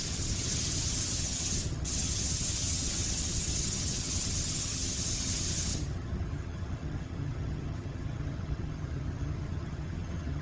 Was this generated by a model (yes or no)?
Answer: yes